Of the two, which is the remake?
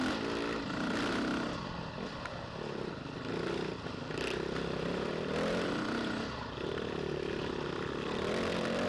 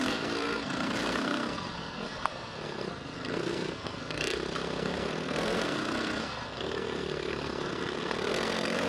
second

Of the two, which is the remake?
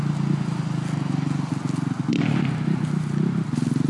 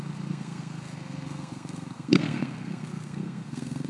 second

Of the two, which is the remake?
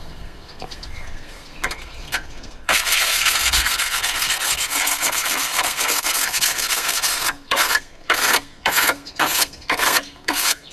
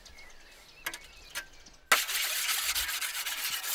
first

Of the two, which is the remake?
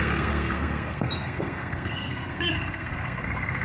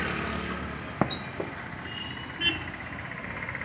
first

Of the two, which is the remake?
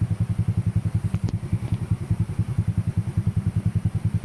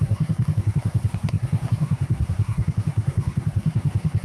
second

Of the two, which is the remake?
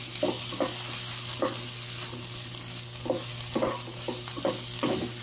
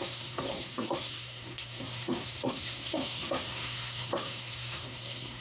second